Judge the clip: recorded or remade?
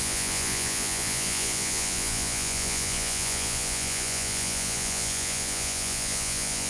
remade